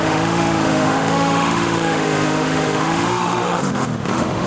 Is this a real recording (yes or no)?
no